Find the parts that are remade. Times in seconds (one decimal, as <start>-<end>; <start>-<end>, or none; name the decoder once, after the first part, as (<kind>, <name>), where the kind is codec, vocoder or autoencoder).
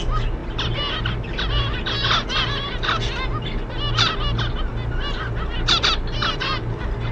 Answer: none